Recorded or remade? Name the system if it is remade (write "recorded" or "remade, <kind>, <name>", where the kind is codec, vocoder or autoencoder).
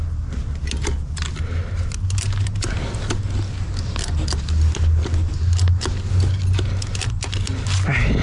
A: recorded